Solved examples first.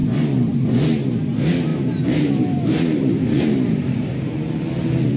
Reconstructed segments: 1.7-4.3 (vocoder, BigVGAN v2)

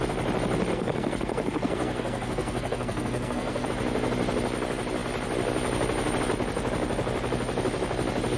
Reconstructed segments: 0.7-3.7 (codec, SNAC)

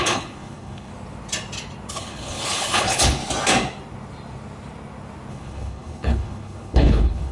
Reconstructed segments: 0.0-0.9 (codec, HILCodec); 1.9-3.2; 5.3-7.3

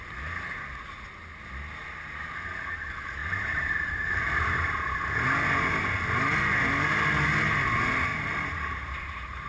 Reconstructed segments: 3.2-4.7 (vocoder, BigVGAN v2); 8.1-9.5

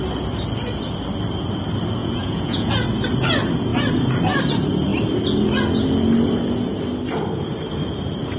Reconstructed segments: 2.0-2.7 (vocoder, Vocos)